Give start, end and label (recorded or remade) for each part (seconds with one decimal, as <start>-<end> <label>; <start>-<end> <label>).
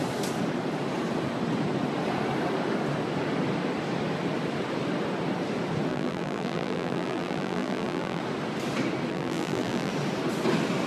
0.0-5.9 recorded; 5.9-8.2 remade; 8.2-9.1 recorded; 9.1-9.9 remade; 9.9-10.9 recorded